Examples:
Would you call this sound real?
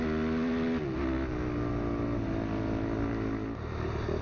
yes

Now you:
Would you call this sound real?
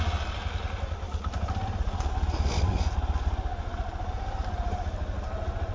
yes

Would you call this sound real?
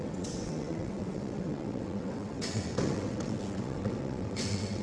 no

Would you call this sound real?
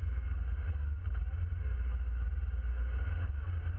yes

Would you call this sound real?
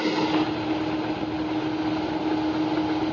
yes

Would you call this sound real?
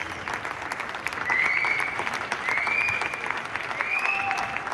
yes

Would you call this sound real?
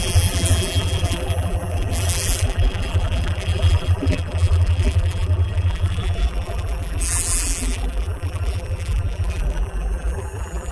no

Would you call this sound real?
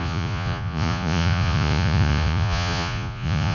no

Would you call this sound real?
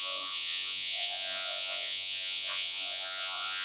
no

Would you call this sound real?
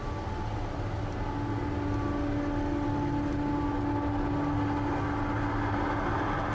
yes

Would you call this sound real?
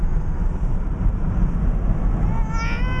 yes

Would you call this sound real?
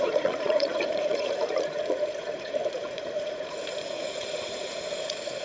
no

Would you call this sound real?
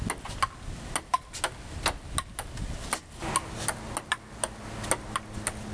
yes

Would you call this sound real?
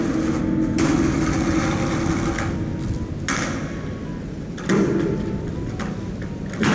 yes